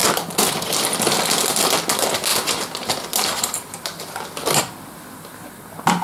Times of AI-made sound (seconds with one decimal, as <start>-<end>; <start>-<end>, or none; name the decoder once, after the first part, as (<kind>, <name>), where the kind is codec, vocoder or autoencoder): none